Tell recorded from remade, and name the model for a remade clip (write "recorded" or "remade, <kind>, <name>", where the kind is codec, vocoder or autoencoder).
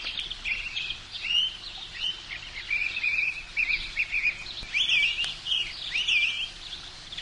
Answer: recorded